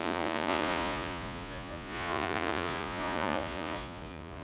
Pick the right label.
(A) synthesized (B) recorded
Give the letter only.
A